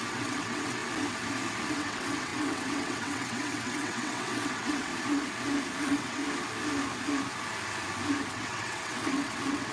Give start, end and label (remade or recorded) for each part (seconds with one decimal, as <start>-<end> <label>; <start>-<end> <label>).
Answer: 0.0-0.8 remade; 0.8-1.7 recorded; 1.7-4.9 remade; 4.9-5.8 recorded; 5.8-6.2 remade; 6.2-8.3 recorded; 8.3-9.7 remade